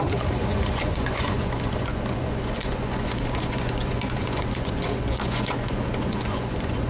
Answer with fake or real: fake